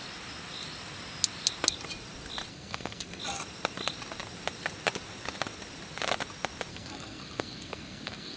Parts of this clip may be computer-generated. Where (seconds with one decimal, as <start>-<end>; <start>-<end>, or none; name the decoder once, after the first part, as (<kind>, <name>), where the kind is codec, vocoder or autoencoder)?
2.5-3.2 (codec, SNAC); 6.7-8.4